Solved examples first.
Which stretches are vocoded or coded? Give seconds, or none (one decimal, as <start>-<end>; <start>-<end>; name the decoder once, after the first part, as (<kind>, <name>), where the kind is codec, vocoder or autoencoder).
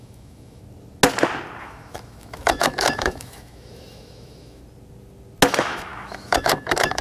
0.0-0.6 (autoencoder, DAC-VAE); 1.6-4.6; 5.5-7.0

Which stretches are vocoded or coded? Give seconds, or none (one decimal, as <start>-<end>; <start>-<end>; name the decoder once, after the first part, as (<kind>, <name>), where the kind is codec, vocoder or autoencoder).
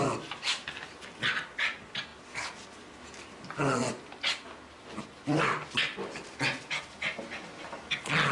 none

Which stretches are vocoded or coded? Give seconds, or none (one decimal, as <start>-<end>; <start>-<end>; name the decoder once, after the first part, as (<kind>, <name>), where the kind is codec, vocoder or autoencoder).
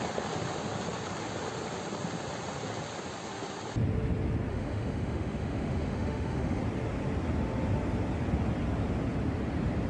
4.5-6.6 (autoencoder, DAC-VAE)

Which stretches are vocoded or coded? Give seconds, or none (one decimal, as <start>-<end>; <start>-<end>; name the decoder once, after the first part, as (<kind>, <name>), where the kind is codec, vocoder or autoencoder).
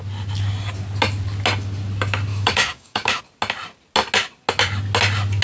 2.3-3.2 (autoencoder, DAC-VAE)